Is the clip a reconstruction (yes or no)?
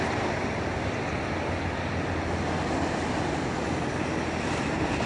no